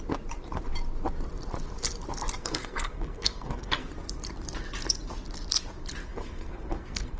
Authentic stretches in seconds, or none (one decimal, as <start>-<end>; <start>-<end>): 0.0-2.4; 3.9-6.1